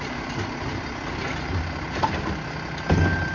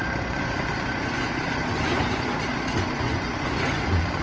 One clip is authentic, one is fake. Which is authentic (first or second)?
first